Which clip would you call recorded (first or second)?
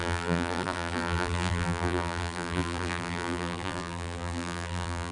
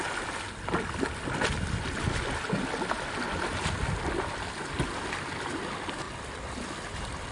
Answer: second